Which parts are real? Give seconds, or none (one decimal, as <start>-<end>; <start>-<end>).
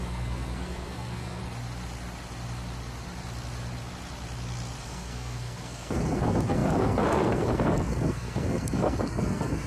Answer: 1.4-4.8